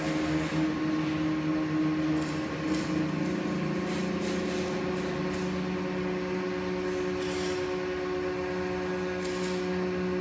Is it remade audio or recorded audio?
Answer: recorded